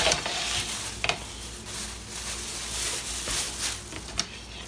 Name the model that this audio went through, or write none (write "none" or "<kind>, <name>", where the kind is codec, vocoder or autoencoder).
none